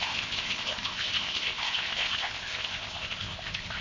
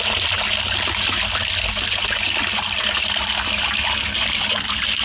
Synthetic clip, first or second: first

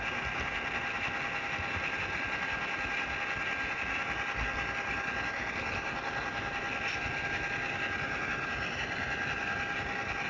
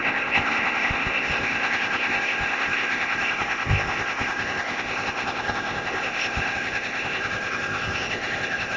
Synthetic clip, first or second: second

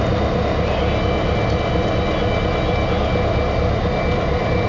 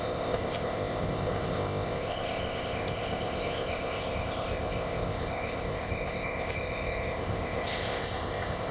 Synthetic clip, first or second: second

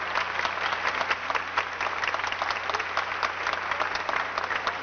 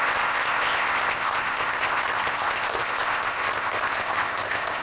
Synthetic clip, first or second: second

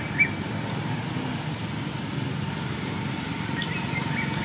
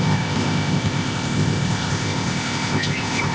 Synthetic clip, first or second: second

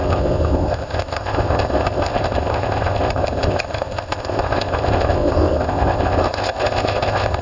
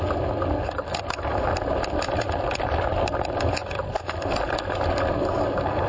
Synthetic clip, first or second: first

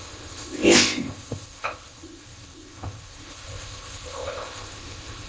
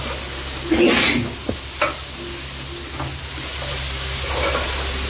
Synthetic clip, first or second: first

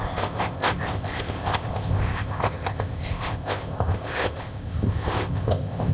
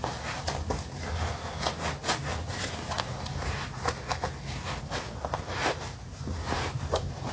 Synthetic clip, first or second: first